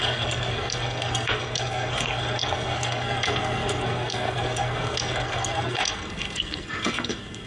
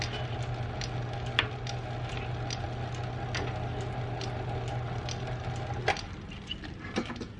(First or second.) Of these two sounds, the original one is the second